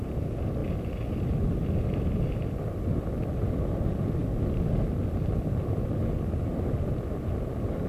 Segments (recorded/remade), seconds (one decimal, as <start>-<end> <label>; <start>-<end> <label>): 0.0-0.6 remade; 0.6-1.5 recorded; 1.5-4.2 remade; 4.2-4.7 recorded; 4.7-7.9 remade